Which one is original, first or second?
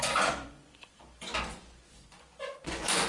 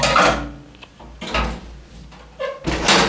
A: second